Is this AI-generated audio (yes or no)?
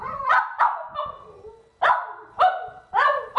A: no